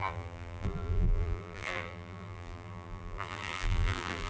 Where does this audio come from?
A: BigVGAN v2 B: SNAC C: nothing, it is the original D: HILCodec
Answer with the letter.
A